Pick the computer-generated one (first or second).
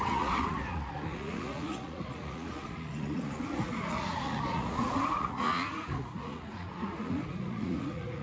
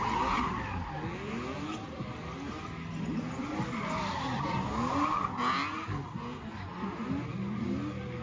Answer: first